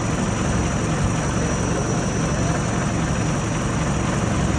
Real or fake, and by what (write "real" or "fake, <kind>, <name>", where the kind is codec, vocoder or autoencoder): real